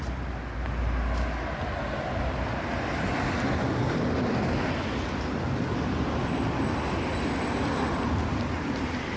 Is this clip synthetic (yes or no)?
no